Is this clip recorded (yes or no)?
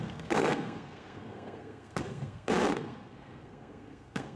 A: no